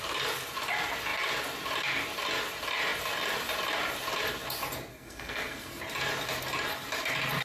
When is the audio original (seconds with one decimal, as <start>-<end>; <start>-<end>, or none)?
0.0-4.9; 5.8-7.4